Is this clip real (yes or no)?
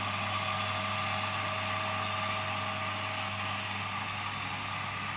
yes